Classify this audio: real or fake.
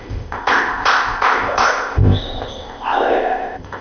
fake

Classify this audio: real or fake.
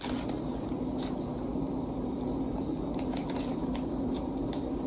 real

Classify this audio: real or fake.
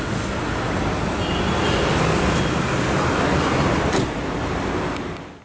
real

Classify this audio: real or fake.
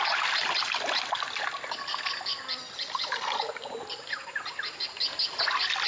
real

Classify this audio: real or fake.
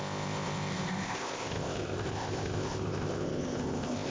fake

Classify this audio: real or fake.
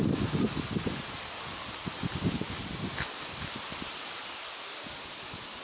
real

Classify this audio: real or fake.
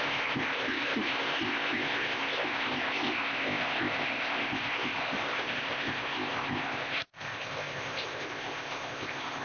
fake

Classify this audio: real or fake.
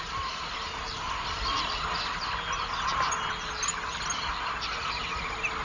real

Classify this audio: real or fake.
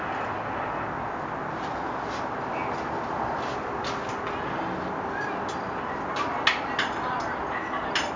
real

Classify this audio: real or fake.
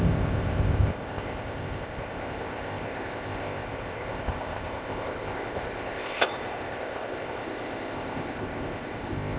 fake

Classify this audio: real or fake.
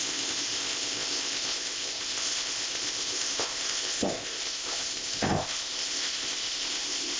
fake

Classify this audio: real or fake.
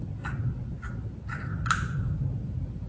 real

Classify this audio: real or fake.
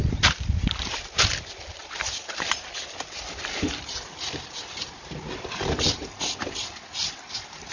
real